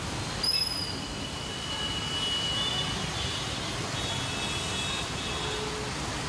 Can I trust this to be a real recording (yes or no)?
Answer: yes